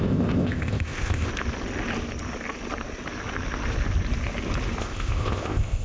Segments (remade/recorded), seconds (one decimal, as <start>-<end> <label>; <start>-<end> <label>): 0.0-1.3 remade; 1.3-4.8 recorded; 4.8-5.8 remade